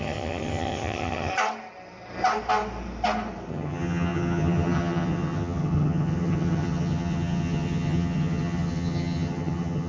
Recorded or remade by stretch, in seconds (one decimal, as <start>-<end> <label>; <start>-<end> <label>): 0.0-1.3 remade; 1.3-3.5 recorded; 3.5-9.9 remade